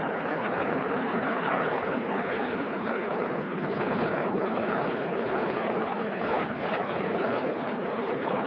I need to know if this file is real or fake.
fake